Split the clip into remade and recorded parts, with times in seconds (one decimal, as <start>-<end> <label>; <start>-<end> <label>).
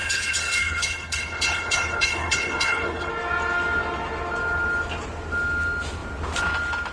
0.0-3.1 remade; 3.1-6.9 recorded